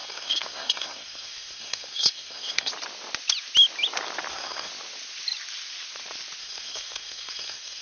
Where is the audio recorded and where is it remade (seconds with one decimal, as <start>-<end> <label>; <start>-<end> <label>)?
0.0-2.7 remade; 2.7-4.3 recorded; 4.3-4.7 remade; 4.7-6.4 recorded; 6.4-7.8 remade